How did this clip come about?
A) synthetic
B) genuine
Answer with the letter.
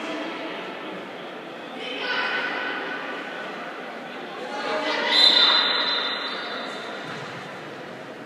B